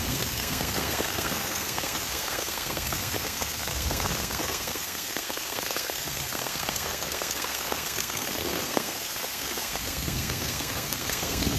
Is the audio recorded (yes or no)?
no